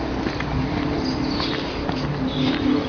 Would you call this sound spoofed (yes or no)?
no